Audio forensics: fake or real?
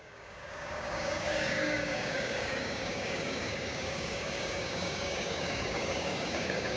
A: fake